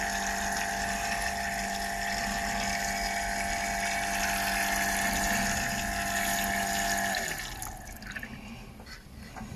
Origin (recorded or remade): recorded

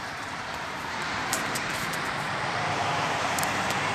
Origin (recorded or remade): remade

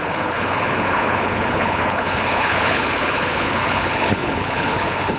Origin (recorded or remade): remade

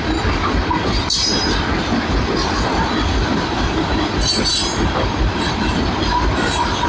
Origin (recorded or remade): recorded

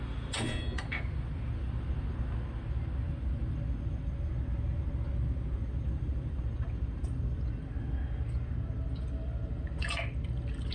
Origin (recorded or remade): recorded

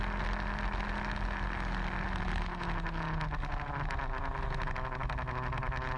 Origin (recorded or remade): recorded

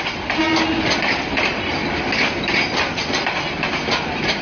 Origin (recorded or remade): recorded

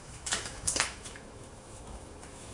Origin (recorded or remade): remade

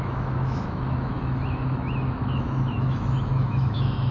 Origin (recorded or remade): remade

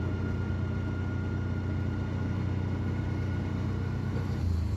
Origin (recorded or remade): recorded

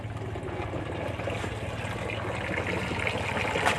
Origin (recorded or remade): recorded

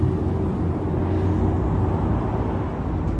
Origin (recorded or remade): recorded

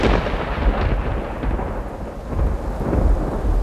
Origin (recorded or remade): recorded